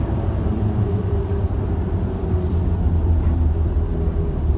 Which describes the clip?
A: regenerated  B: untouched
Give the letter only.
A